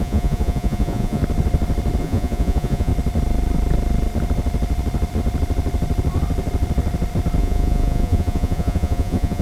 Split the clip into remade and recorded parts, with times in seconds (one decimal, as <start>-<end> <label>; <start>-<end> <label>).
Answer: 0.0-1.2 remade; 1.2-2.0 recorded; 2.0-2.9 remade; 2.9-7.4 recorded; 7.4-9.4 remade